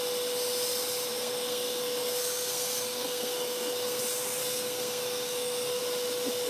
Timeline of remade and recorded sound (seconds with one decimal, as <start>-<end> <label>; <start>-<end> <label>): 0.0-1.1 recorded; 1.1-4.0 remade; 4.0-4.4 recorded; 4.4-5.8 remade; 5.8-6.5 recorded